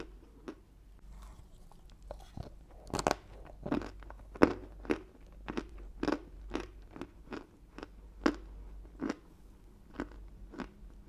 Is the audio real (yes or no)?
yes